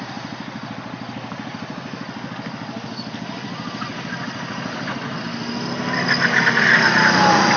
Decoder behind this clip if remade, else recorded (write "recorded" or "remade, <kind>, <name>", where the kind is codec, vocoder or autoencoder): recorded